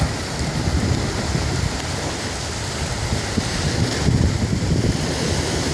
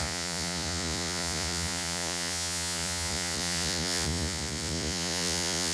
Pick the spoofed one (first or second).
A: second